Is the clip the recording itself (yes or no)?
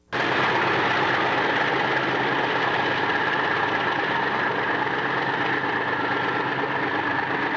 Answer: yes